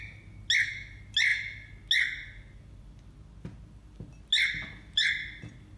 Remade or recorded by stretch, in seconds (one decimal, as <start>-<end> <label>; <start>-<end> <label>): 0.0-5.8 recorded